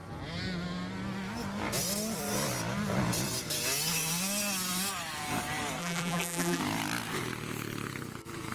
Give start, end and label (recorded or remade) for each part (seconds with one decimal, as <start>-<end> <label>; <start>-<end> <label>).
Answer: 0.0-5.8 recorded; 5.8-6.6 remade; 6.6-8.5 recorded

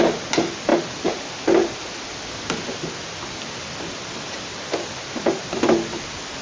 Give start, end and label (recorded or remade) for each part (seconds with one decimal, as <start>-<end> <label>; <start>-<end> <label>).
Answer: 0.0-6.4 recorded

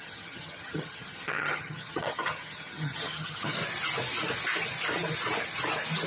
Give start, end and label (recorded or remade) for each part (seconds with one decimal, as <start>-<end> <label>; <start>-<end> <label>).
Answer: 0.0-3.6 remade; 3.6-6.1 recorded

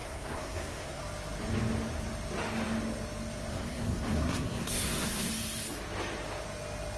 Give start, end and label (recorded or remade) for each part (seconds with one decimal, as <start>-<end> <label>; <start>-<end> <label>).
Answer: 0.0-1.0 remade; 1.0-3.5 recorded; 3.5-5.3 remade; 5.3-7.0 recorded

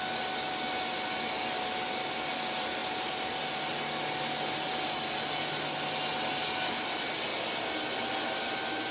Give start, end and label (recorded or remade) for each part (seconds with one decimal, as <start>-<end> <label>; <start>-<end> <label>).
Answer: 0.0-8.9 recorded

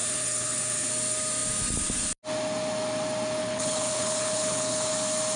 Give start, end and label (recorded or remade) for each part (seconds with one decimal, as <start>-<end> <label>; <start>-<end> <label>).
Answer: 0.0-0.9 remade; 0.9-3.4 recorded; 3.4-4.9 remade; 4.9-5.4 recorded

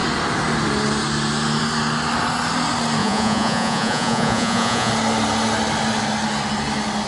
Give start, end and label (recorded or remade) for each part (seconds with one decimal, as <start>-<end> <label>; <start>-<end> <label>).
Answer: 0.0-3.0 recorded; 3.0-4.9 remade; 4.9-7.1 recorded